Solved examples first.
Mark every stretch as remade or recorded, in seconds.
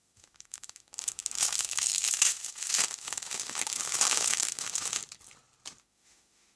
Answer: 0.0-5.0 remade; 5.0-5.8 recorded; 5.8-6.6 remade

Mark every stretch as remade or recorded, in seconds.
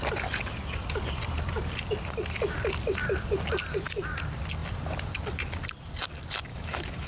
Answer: 0.0-6.5 recorded; 6.5-7.1 remade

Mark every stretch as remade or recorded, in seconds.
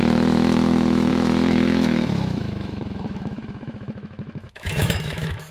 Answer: 0.0-5.5 remade